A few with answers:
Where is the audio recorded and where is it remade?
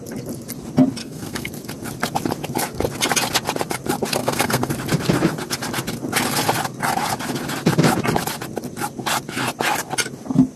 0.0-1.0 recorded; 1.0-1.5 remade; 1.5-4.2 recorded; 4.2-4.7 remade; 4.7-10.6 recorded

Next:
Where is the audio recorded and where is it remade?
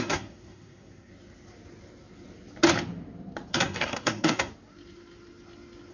0.0-1.1 remade; 1.1-3.5 recorded; 3.5-4.5 remade; 4.5-5.9 recorded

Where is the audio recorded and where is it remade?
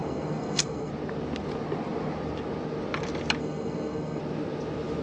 0.0-0.9 remade; 0.9-3.4 recorded; 3.4-4.2 remade; 4.2-5.0 recorded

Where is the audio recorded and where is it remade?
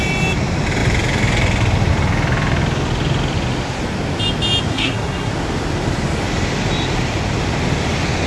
0.0-4.7 recorded; 4.7-5.3 remade; 5.3-8.3 recorded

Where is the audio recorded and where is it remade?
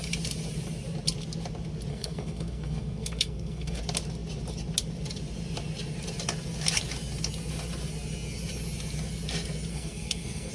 0.0-1.9 recorded; 1.9-3.8 remade; 3.8-9.7 recorded; 9.7-10.5 remade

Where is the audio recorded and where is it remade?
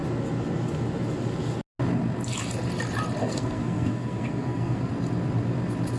0.0-3.2 recorded; 3.2-4.9 remade; 4.9-6.0 recorded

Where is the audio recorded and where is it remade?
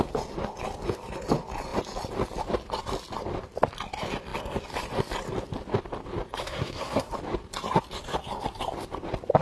0.0-6.4 recorded; 6.4-7.1 remade; 7.1-9.4 recorded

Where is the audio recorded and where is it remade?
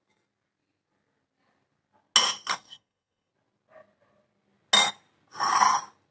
0.0-2.5 recorded; 2.5-3.3 remade; 3.3-6.1 recorded